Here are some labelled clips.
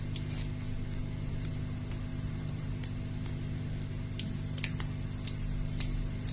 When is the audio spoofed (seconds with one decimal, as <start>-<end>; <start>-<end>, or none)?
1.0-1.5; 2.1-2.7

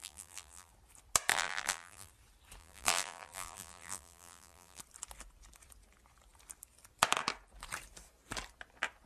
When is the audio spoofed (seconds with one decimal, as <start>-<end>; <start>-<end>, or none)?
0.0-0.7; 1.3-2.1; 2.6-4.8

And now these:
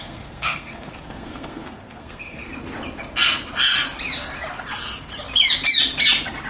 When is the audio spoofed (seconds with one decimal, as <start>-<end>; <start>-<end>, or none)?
0.0-2.5

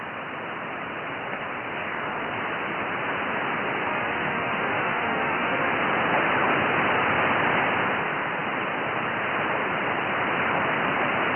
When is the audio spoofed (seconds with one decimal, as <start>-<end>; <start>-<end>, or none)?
3.9-5.7

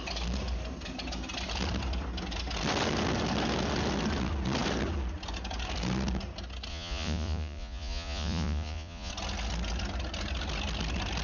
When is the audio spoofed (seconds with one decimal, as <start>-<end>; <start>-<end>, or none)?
6.7-9.1

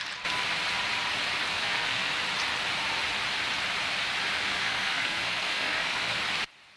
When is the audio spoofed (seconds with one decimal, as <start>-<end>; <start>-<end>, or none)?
1.5-2.1; 4.4-6.2

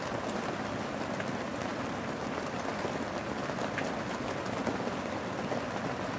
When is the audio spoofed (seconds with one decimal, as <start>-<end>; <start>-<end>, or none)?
none

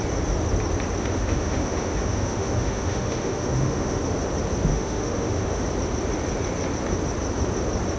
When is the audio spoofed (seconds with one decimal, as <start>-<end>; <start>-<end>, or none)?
1.0-4.0; 4.7-5.6